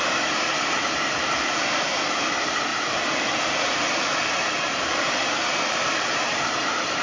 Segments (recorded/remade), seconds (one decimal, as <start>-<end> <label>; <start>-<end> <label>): 0.0-1.2 remade; 1.2-2.7 recorded; 2.7-7.0 remade